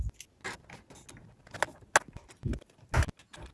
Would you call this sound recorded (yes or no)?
yes